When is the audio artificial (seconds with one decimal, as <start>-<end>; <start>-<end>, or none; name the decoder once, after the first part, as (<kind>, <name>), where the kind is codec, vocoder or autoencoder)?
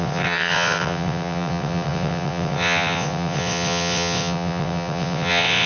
0.0-5.7 (vocoder, WaveNeXt)